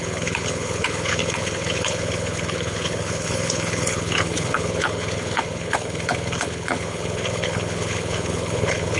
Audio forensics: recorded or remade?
remade